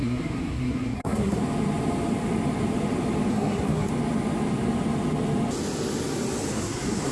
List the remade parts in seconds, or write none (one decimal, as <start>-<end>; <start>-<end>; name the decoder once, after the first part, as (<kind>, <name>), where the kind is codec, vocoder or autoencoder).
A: 0.0-1.4 (codec, SNAC); 3.3-3.9; 6.5-7.1